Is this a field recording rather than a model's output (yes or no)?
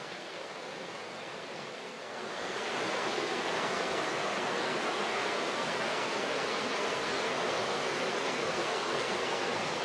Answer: no